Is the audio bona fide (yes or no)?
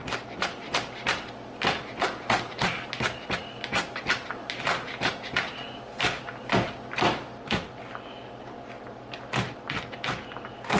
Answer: yes